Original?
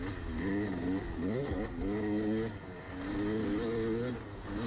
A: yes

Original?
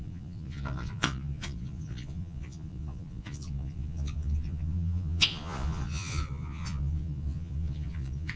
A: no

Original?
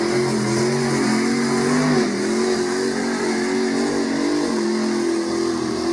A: yes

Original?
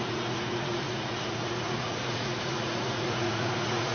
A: no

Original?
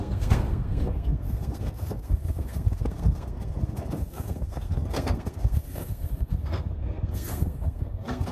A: no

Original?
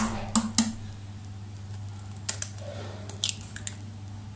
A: yes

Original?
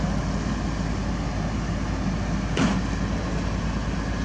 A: yes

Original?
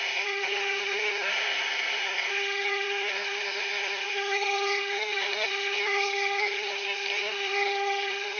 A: no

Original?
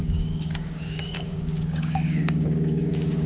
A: no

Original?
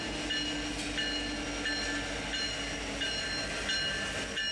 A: yes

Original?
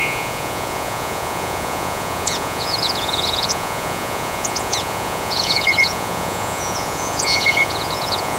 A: no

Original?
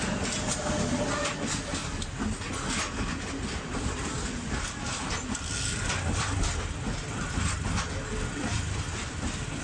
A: yes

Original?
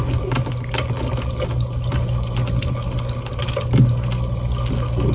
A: yes